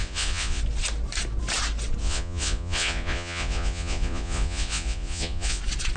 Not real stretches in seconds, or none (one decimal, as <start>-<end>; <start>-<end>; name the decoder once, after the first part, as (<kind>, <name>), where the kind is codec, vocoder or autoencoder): 0.0-0.6 (vocoder, Vocos); 2.0-5.6